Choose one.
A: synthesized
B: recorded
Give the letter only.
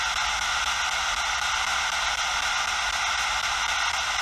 B